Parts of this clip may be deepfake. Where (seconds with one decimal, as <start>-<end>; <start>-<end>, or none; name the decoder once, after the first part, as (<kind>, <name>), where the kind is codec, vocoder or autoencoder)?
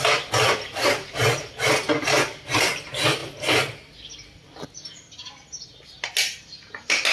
none